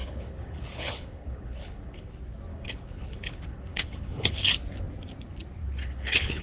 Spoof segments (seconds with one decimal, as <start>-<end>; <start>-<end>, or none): 0.0-2.1; 2.5-4.5; 5.8-6.4